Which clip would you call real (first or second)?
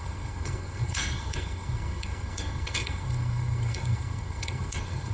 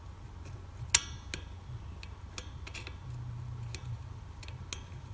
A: second